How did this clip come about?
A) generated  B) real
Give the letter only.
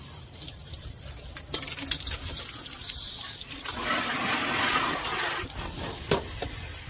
B